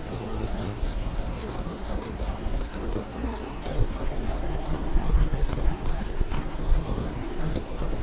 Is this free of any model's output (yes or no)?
no